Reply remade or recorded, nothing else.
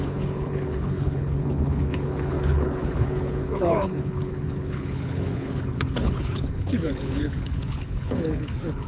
remade